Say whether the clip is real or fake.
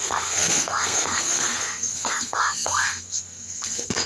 fake